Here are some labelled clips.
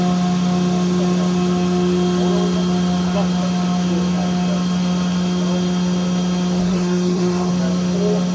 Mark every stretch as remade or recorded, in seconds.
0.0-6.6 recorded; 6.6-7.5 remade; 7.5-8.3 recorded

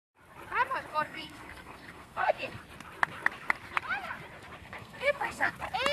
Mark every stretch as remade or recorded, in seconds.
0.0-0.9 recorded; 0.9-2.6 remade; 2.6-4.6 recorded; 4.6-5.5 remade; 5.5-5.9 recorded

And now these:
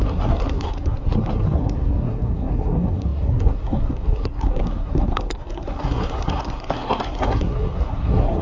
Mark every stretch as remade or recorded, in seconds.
0.0-8.4 remade